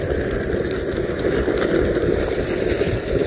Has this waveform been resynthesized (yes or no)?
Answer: no